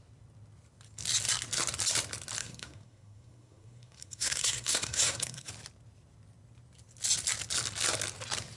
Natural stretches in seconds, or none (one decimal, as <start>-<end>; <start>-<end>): 0.0-2.4; 5.5-8.6